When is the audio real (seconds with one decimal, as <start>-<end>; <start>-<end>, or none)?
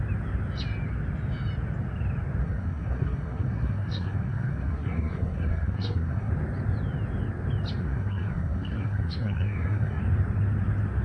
0.0-2.4; 6.3-7.8; 10.0-11.0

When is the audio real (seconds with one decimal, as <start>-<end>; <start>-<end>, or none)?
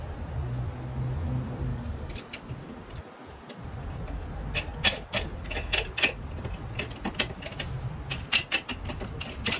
0.0-1.7; 2.5-9.6